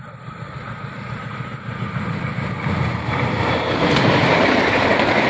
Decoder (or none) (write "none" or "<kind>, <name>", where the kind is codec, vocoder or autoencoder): vocoder, BigVGAN v2